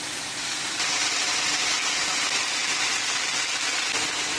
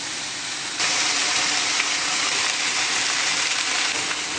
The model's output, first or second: second